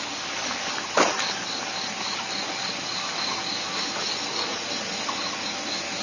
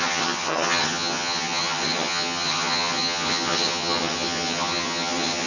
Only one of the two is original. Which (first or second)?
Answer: first